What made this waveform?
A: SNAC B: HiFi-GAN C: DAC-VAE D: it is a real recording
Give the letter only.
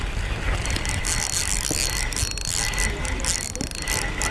D